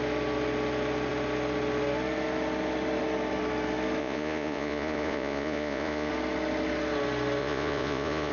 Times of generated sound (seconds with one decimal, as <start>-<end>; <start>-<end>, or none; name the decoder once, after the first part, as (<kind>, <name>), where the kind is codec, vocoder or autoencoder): 4.0-6.1 (vocoder, Vocos); 7.4-8.3